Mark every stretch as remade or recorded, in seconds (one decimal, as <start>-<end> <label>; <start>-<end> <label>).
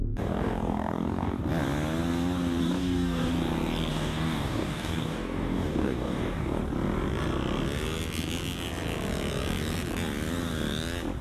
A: 0.0-1.4 remade; 1.4-2.6 recorded; 2.6-3.3 remade; 3.3-3.9 recorded; 3.9-6.6 remade; 6.6-11.2 recorded